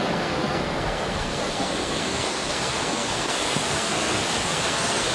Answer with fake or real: fake